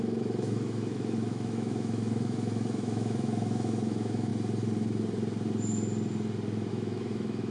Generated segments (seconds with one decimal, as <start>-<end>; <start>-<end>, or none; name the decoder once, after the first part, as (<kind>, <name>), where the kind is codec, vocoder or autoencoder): 0.0-4.3 (autoencoder, DAC-VAE); 6.7-7.5